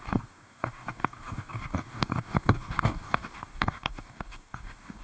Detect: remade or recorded remade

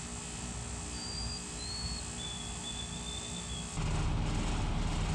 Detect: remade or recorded recorded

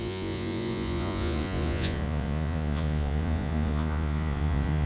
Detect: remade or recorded remade